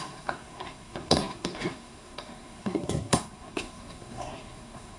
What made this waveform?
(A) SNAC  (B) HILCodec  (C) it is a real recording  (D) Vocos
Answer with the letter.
A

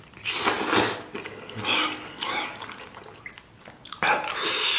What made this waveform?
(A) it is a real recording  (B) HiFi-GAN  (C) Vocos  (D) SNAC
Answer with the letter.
A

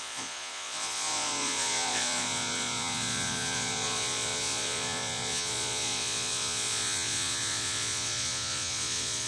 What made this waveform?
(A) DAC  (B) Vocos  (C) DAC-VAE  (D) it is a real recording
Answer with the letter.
B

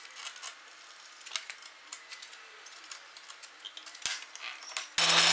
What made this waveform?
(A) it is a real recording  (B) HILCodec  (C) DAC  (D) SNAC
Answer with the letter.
A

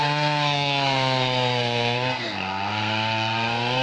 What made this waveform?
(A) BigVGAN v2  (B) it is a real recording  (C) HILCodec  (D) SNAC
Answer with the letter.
D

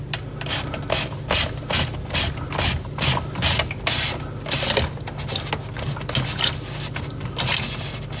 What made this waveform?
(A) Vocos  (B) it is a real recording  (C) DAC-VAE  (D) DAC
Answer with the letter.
B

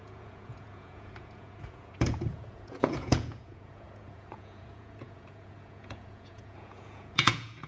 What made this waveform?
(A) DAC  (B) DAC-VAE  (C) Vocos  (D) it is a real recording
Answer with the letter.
C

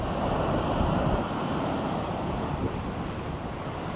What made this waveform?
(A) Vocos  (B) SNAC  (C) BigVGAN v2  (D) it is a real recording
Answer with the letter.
D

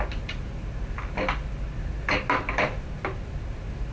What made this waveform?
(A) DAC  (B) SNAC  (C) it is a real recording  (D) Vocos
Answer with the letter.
C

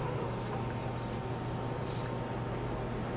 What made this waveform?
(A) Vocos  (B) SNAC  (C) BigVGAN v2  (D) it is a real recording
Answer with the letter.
D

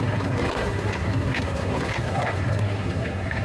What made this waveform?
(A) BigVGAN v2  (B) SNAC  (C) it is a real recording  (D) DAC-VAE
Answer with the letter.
B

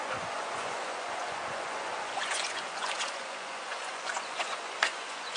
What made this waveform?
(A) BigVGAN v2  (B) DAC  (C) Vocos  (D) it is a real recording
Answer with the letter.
C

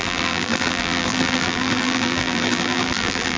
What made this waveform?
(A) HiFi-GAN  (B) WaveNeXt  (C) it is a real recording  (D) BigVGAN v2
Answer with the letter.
D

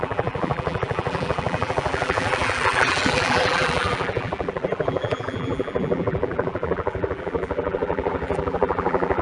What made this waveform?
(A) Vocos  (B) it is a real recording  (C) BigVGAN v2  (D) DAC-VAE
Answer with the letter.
C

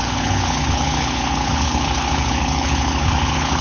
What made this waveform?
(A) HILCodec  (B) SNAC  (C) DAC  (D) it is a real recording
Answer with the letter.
A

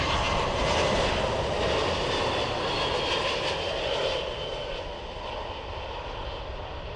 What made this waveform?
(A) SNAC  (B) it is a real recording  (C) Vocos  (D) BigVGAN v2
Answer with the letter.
B